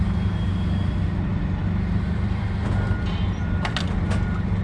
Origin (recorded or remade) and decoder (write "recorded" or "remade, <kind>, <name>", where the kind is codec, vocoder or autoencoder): recorded